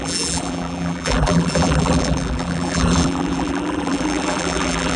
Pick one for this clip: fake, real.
fake